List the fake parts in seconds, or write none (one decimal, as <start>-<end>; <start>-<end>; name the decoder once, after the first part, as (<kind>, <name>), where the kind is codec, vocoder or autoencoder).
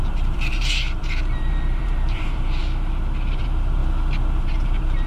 0.0-2.6 (vocoder, BigVGAN v2); 3.3-3.8; 4.4-5.1